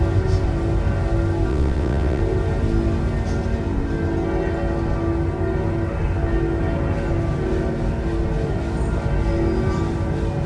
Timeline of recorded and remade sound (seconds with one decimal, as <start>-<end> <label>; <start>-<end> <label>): 0.0-1.5 recorded; 1.5-2.2 remade; 2.2-10.5 recorded